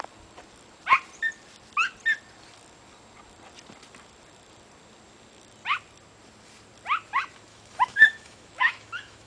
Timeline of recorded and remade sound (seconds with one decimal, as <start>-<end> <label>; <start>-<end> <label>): 0.0-7.5 recorded; 7.5-9.3 remade